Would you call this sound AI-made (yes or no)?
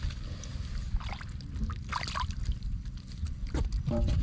no